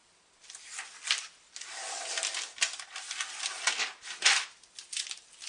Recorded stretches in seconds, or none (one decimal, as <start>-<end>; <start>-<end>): 0.0-5.5